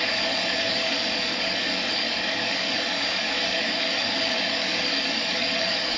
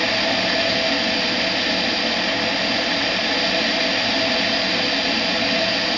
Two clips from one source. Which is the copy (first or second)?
first